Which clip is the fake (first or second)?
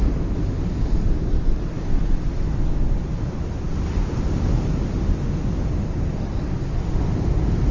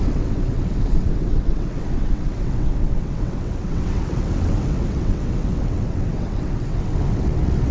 second